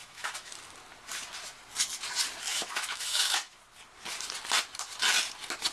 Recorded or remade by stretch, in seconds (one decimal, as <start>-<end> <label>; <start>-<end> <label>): 0.0-0.5 remade; 0.5-2.5 recorded; 2.5-3.6 remade; 3.6-5.7 recorded